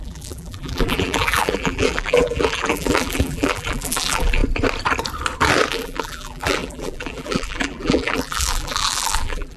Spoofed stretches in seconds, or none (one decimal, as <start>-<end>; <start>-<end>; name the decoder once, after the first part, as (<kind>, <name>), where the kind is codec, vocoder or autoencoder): 0.0-4.4 (vocoder, BigVGAN v2); 5.7-9.6